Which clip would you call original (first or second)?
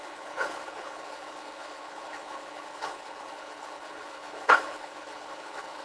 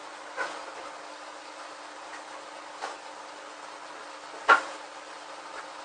second